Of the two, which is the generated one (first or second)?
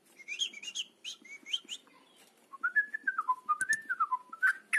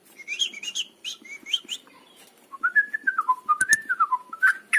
second